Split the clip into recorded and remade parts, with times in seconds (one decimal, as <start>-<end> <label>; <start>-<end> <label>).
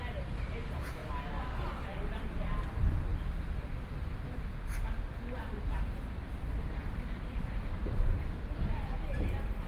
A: 0.0-1.0 remade; 1.0-1.8 recorded; 1.8-3.9 remade; 3.9-4.5 recorded; 4.5-9.7 remade